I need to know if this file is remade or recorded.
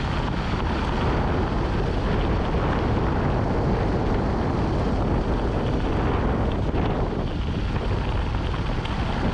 recorded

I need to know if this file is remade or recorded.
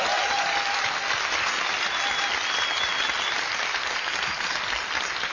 recorded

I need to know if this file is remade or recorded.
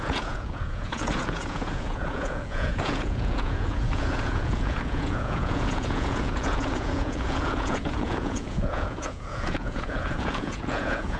remade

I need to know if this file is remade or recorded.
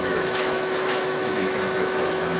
remade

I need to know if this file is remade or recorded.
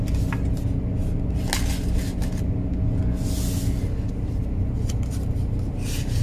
recorded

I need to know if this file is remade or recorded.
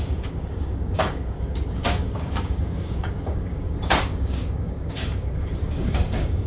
remade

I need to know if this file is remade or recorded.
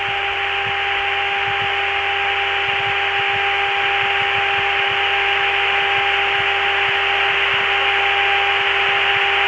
recorded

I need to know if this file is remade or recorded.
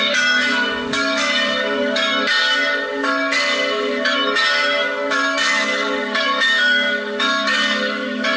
remade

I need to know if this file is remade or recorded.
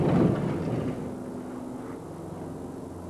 recorded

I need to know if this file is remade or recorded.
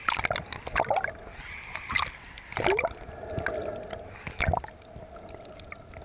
recorded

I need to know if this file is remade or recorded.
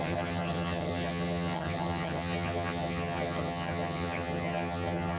remade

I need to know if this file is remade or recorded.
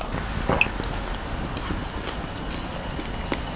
recorded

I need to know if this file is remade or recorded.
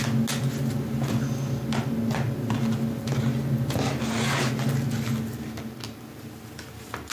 recorded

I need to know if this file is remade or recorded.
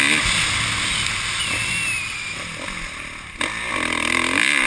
recorded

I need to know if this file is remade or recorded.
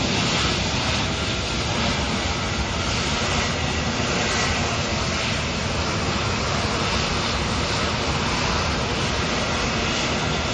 recorded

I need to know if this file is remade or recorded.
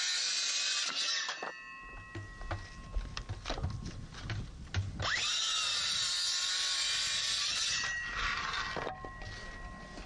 recorded